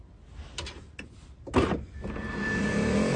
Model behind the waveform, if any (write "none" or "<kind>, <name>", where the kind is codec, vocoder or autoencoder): none